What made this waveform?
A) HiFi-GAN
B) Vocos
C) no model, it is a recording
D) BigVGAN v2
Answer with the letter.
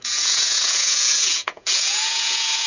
B